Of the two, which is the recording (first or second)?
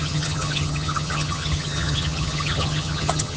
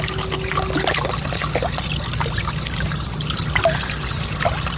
second